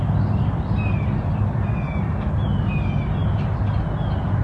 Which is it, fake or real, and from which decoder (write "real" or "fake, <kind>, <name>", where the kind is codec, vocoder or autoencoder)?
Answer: real